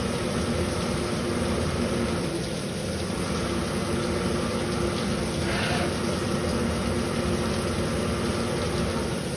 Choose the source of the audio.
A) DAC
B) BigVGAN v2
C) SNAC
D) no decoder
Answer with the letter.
D